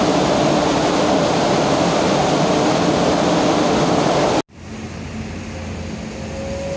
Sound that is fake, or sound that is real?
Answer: real